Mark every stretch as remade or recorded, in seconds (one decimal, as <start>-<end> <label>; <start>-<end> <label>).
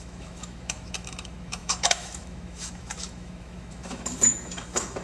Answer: 0.0-5.0 remade